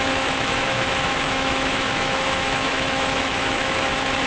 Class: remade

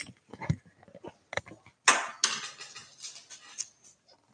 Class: recorded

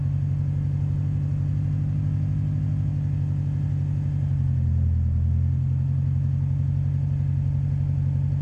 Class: recorded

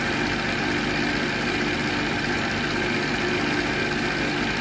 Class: recorded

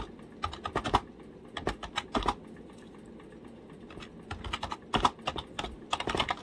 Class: recorded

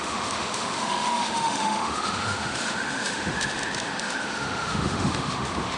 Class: remade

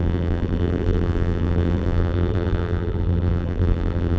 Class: remade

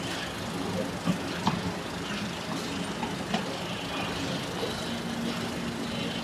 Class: recorded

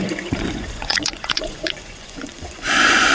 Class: remade